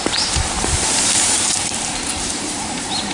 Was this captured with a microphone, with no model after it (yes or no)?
no